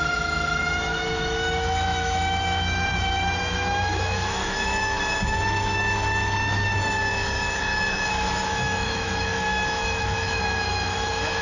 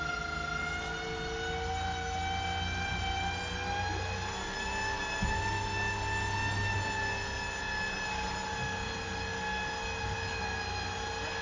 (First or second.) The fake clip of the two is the first